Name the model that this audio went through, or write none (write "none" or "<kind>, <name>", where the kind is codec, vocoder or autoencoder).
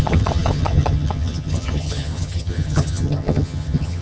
vocoder, HiFi-GAN